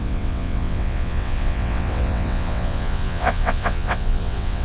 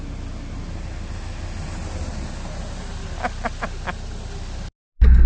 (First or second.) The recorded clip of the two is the second